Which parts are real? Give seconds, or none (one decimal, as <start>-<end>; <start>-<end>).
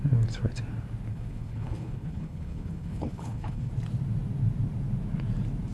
0.0-1.1; 3.7-5.7